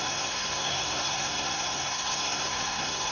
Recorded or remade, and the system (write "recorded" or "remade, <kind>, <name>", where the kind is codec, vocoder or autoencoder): remade, codec, SNAC